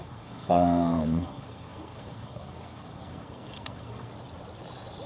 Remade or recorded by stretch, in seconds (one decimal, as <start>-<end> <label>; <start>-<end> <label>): 0.0-4.1 remade; 4.1-5.1 recorded